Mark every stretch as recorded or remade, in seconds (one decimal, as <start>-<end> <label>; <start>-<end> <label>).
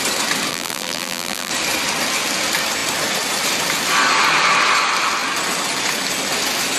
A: 0.0-0.5 recorded; 0.5-1.5 remade; 1.5-6.8 recorded